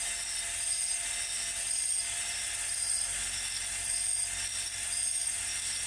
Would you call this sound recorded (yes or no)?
yes